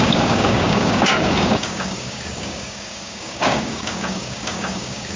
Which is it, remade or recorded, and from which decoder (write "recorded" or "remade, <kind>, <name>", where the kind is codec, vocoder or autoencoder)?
remade, codec, DAC